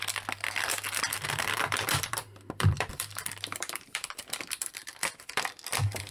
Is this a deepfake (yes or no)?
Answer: yes